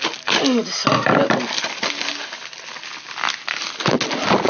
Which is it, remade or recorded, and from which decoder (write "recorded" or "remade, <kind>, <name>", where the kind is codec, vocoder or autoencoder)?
recorded